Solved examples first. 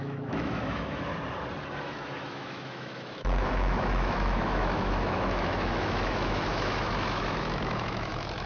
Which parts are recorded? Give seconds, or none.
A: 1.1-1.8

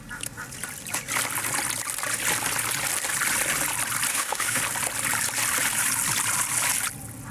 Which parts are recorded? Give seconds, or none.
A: 0.0-4.1; 4.6-7.3

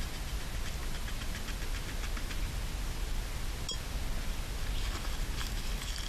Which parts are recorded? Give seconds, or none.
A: 0.0-6.1

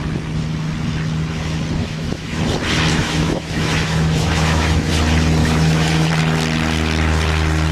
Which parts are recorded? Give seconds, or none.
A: 0.0-1.8; 2.4-2.9; 4.9-5.4; 6.1-7.7

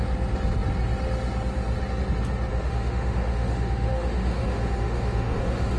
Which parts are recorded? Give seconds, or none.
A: 0.0-2.5

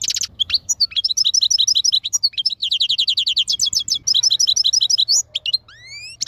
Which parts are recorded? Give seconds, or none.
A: 0.0-6.3

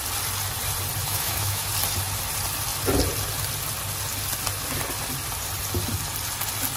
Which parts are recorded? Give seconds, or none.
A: 0.0-1.0; 1.7-6.8

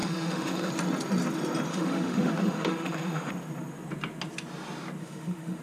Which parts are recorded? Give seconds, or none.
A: 0.7-1.7; 3.3-5.0